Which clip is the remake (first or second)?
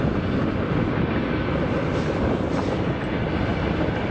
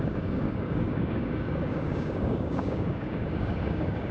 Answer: second